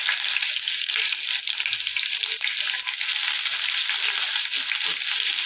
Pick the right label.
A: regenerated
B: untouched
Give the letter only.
B